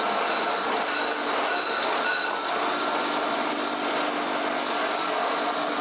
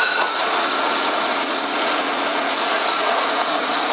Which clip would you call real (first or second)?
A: first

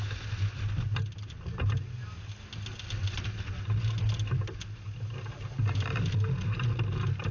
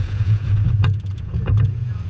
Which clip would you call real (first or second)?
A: first